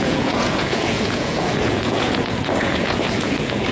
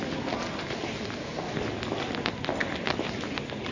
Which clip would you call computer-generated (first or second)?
first